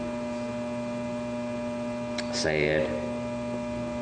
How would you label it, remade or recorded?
recorded